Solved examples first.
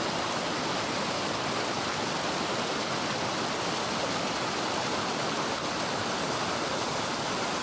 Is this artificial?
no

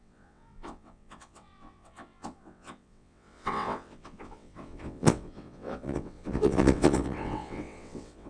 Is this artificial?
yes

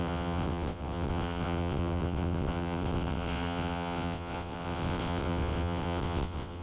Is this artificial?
yes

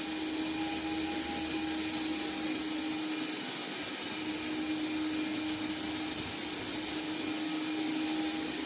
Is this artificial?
no